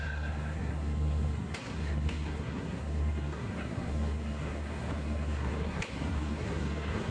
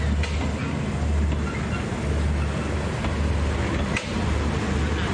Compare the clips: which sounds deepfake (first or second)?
first